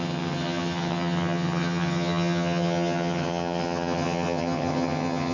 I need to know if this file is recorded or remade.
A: remade